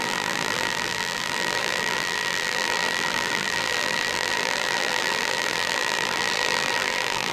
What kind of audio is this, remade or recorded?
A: remade